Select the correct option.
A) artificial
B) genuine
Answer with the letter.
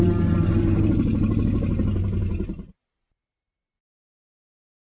A